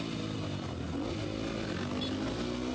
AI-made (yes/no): no